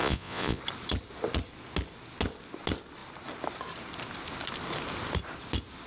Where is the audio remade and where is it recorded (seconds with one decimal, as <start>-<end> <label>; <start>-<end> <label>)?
0.0-0.6 remade; 0.6-5.9 recorded